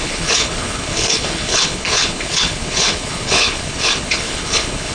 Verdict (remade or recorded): remade